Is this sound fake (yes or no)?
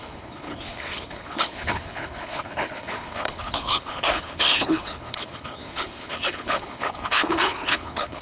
yes